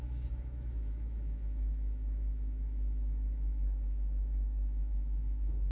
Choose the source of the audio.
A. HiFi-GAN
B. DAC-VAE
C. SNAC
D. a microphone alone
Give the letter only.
B